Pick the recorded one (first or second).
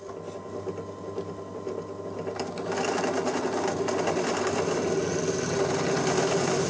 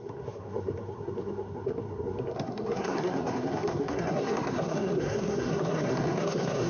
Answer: first